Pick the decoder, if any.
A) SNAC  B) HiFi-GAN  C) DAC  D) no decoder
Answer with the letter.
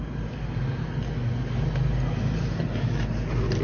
D